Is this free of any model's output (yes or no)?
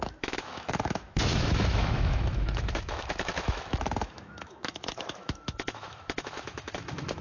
no